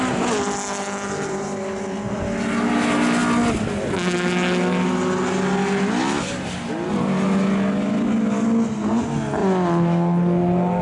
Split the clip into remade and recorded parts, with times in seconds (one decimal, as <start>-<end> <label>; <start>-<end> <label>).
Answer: 0.0-10.8 recorded

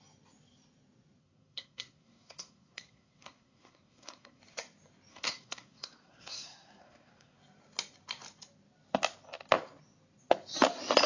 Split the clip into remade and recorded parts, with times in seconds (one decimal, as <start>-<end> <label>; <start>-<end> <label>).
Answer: 0.0-1.2 recorded; 1.2-4.4 remade; 4.4-5.1 recorded; 5.1-7.4 remade; 7.4-11.1 recorded

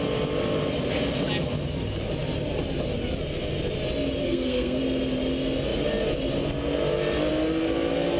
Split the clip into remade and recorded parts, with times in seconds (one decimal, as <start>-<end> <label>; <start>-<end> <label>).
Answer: 0.0-4.2 recorded; 4.2-4.8 remade; 4.8-8.2 recorded

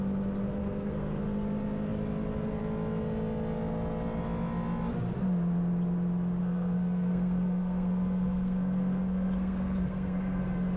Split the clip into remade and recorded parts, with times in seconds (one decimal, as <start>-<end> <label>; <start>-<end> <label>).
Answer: 0.0-0.6 recorded; 0.6-1.2 remade; 1.2-6.4 recorded; 6.4-10.4 remade; 10.4-10.8 recorded

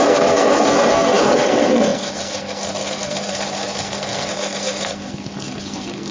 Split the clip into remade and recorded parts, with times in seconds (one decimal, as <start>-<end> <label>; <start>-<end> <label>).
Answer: 0.0-6.1 remade

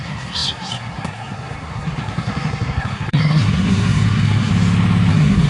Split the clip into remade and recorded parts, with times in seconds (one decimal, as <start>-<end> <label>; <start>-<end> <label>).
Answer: 0.0-4.5 remade; 4.5-5.1 recorded; 5.1-5.5 remade